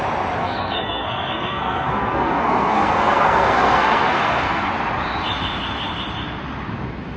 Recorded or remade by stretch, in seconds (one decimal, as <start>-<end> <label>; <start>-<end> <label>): 0.0-0.4 recorded; 0.4-4.7 remade; 4.7-7.2 recorded